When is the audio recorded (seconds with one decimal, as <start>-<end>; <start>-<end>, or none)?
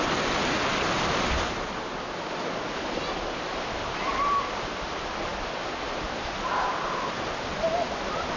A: 0.0-8.4